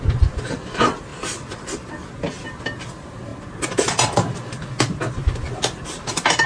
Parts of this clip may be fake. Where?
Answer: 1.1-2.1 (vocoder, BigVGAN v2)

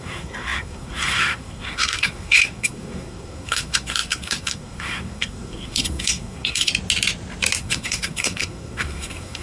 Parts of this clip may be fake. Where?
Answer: 0.0-6.7 (codec, SNAC); 7.6-9.4

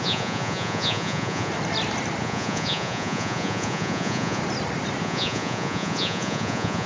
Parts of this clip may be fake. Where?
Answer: 0.0-1.5 (vocoder, Vocos); 2.2-4.4; 5.0-6.9

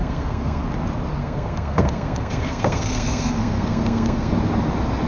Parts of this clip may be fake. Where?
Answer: 0.0-0.6 (codec, SNAC); 1.2-4.3

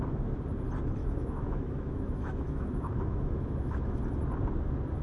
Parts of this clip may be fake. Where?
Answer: 1.0-4.0 (autoencoder, DAC-VAE)

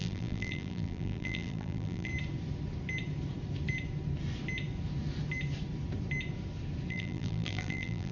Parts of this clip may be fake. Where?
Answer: 0.0-2.1 (vocoder, BigVGAN v2); 6.9-8.1